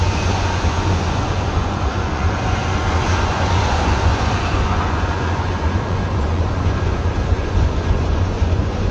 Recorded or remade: remade